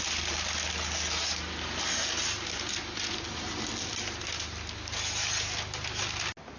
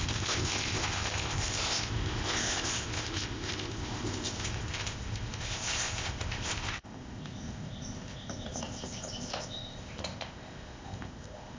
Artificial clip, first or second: second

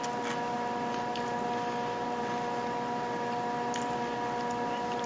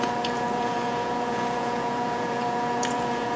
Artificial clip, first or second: second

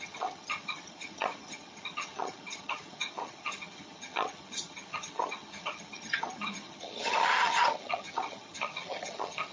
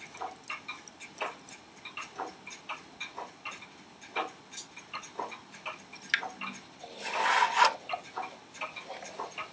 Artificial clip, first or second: first